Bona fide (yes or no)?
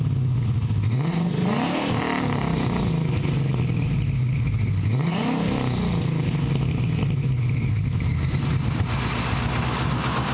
yes